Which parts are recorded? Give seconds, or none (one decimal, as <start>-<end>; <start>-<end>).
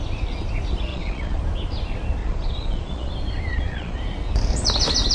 0.0-0.9; 1.4-2.2; 3.1-3.5; 4.0-5.1